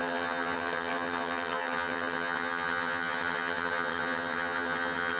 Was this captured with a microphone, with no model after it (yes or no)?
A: no